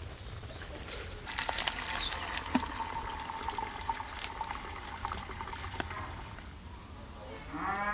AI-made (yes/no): no